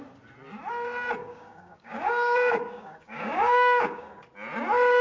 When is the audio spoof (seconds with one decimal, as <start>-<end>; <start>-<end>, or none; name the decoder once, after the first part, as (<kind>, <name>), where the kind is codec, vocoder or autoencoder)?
1.2-4.2 (codec, DAC)